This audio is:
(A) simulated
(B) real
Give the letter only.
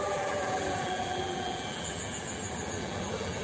A